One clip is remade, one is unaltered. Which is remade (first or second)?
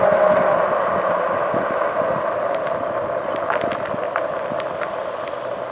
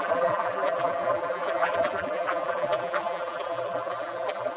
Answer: second